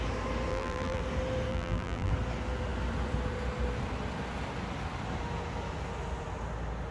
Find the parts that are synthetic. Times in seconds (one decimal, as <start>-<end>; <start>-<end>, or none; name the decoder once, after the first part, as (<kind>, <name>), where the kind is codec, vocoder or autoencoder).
0.5-1.0 (vocoder, BigVGAN v2); 1.5-2.1